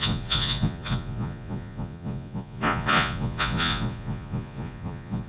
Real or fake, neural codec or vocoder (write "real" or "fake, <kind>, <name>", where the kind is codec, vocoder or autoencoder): fake, vocoder, Vocos